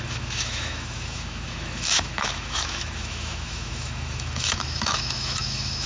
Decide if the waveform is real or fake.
fake